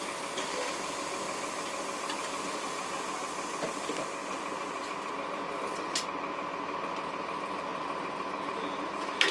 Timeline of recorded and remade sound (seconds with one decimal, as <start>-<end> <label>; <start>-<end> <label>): 0.0-4.2 recorded; 4.2-5.1 remade; 5.1-7.7 recorded; 7.7-8.3 remade; 8.3-9.3 recorded